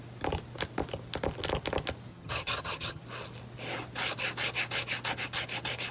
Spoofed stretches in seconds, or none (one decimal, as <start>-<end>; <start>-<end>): 2.1-3.0